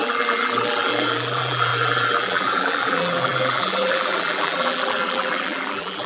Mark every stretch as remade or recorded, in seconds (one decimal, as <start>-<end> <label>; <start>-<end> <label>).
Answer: 0.0-6.1 remade